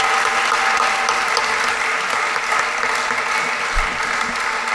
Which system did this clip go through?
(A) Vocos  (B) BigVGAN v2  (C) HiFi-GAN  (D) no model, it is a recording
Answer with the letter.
D